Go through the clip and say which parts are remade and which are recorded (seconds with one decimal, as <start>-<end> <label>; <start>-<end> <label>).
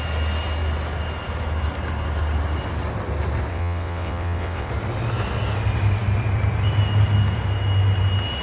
0.0-3.5 recorded; 3.5-4.7 remade; 4.7-8.4 recorded